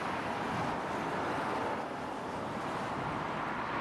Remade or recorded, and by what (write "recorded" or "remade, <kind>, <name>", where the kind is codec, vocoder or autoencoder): recorded